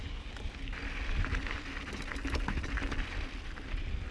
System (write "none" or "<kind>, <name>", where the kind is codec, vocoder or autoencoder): vocoder, BigVGAN v2